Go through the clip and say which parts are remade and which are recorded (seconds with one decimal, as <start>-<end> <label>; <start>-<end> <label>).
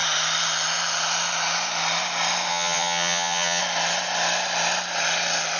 0.0-2.5 recorded; 2.5-3.6 remade; 3.6-5.6 recorded